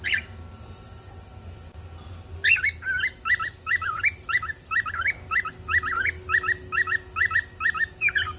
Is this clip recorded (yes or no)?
yes